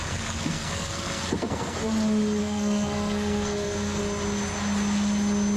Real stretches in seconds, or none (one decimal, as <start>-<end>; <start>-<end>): 1.8-2.4; 4.0-5.6

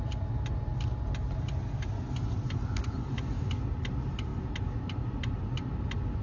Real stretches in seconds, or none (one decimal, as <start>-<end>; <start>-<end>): 0.0-6.2

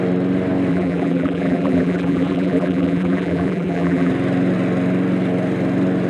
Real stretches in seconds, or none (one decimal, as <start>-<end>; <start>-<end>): 0.0-0.7; 4.1-6.1

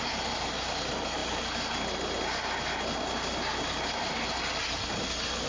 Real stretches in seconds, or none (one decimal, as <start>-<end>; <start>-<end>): 0.0-5.5

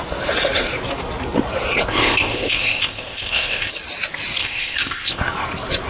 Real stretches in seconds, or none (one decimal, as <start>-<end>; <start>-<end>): 0.0-1.9; 3.7-4.4; 5.2-5.9

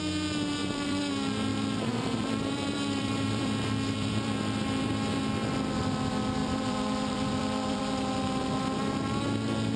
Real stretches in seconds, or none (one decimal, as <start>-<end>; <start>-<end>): 0.0-0.6; 1.1-1.5; 5.2-6.4; 7.8-9.8

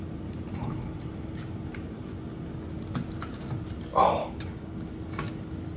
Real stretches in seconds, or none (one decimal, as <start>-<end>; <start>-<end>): 0.0-4.2; 4.9-5.8